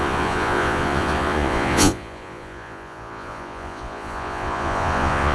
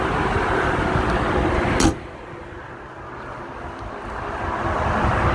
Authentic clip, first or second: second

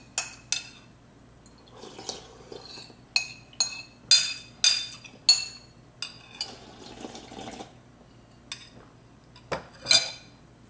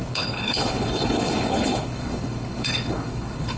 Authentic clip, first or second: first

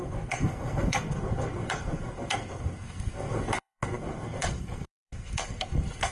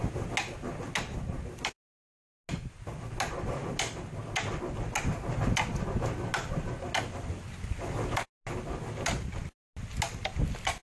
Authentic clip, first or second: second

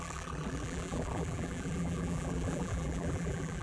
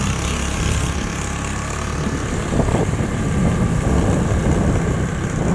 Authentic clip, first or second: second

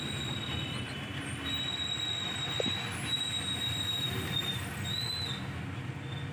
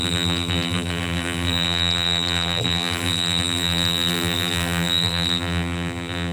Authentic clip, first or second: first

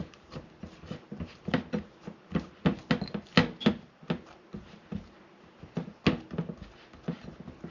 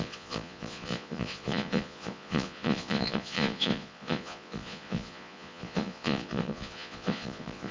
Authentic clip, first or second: first